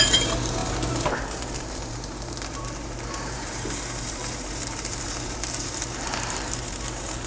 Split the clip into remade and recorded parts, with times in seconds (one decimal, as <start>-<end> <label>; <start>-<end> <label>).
0.0-7.3 remade